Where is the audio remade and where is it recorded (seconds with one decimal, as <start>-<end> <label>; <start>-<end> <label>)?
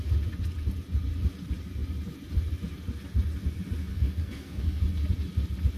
0.0-3.9 recorded; 3.9-4.8 remade; 4.8-5.8 recorded